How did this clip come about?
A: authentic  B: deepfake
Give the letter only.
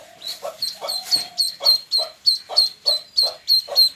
A